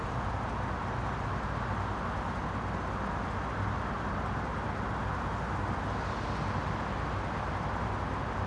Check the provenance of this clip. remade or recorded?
recorded